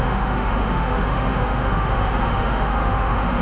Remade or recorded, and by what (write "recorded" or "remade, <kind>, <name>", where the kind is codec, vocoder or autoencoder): remade, autoencoder, DAC-VAE